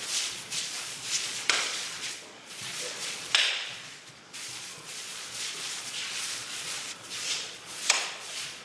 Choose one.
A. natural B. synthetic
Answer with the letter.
B